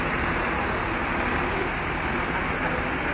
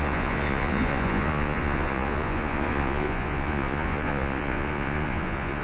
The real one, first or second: first